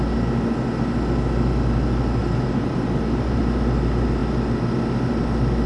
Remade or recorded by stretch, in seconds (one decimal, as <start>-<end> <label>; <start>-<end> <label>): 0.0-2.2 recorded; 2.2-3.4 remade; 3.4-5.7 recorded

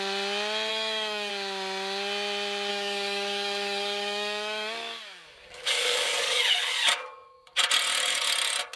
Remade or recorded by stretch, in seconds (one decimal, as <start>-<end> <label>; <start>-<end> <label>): 0.0-0.7 recorded; 0.7-1.3 remade; 1.3-2.7 recorded; 2.7-7.6 remade; 7.6-8.8 recorded

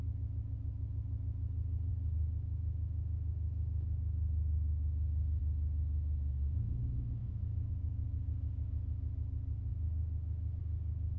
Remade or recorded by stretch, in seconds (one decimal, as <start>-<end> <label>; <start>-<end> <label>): 0.0-7.2 recorded; 7.2-7.7 remade; 7.7-11.2 recorded

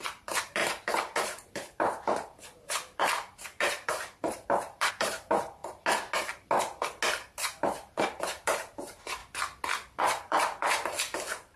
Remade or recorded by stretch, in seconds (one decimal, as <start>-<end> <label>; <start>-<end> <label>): 0.0-5.6 remade; 5.6-7.1 recorded; 7.1-9.2 remade; 9.2-10.0 recorded; 10.0-11.6 remade

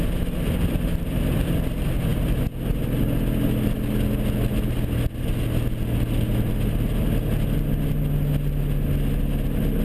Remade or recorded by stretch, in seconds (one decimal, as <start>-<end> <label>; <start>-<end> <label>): 0.0-9.8 recorded